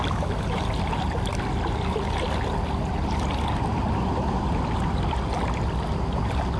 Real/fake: real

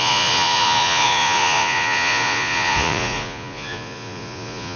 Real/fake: fake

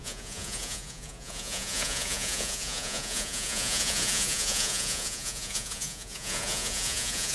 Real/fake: fake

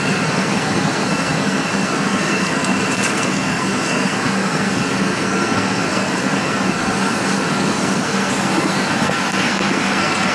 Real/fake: fake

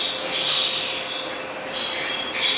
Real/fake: real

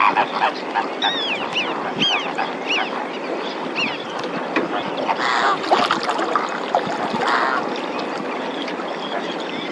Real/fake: real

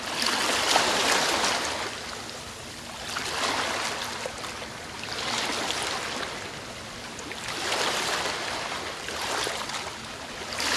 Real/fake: real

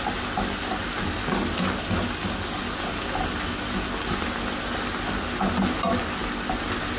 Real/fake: real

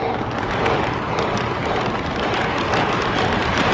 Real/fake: real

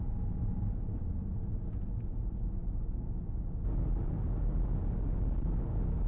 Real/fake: real